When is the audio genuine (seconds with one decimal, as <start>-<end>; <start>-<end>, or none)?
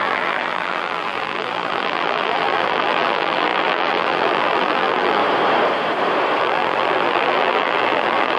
5.2-6.4